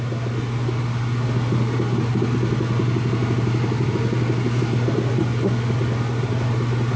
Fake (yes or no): no